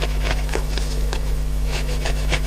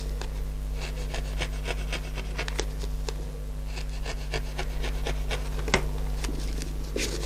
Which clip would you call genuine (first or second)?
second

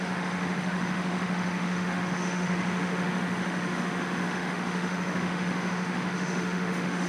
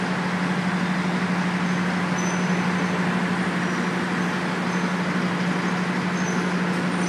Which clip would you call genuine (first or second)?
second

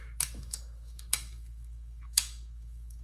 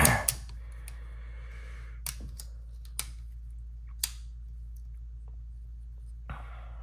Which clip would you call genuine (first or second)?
second